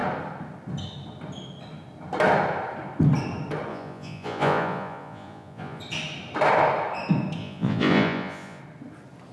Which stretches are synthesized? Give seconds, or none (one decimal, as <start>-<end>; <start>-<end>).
3.7-5.8; 7.4-8.6